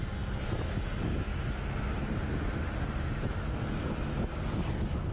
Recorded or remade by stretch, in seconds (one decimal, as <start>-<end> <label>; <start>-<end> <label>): 0.0-5.1 recorded